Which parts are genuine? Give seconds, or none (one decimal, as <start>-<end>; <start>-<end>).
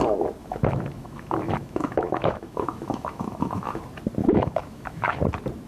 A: 0.0-0.4; 3.8-4.2; 5.2-5.7